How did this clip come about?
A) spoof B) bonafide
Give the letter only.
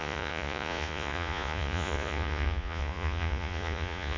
A